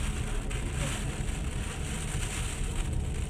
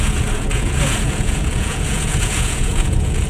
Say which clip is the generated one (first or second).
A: second